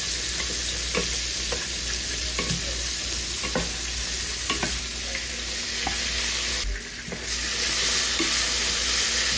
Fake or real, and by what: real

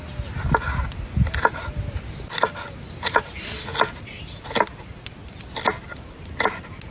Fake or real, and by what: real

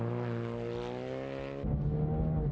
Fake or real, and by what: real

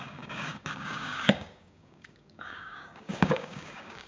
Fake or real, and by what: fake, codec, DAC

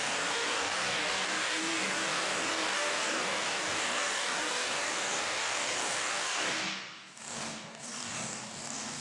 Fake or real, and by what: fake, codec, DAC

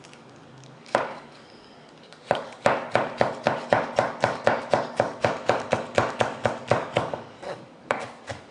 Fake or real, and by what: fake, codec, DAC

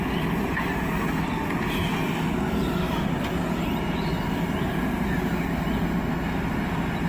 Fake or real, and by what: real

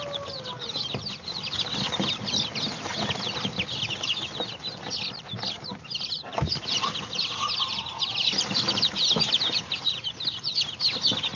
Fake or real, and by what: real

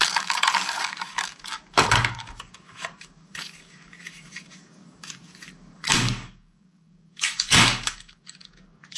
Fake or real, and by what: fake, codec, DAC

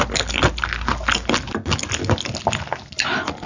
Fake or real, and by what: real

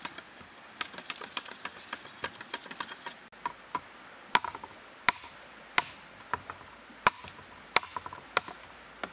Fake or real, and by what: real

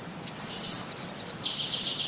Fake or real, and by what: real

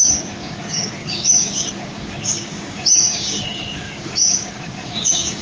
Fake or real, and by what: fake, codec, DAC